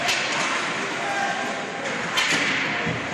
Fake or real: real